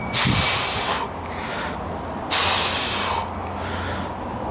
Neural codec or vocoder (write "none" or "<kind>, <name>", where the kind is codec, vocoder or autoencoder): none